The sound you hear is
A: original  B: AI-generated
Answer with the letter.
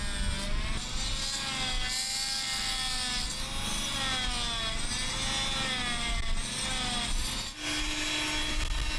A